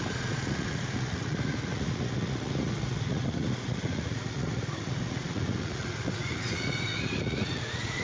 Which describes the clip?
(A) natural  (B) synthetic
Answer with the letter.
B